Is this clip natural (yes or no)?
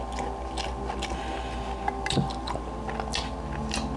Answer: yes